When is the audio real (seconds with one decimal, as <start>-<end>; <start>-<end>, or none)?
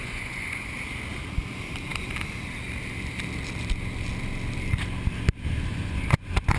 0.7-5.7